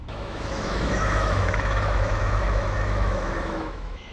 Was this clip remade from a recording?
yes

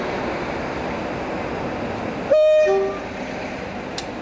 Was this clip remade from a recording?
no